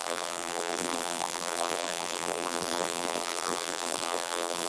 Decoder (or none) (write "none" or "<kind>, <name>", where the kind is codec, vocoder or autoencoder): vocoder, BigVGAN v2